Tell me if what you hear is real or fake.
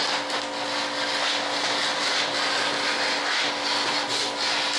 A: real